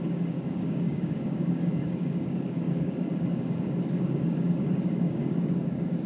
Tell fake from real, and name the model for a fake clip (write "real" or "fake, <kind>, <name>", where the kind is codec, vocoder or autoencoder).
fake, codec, DAC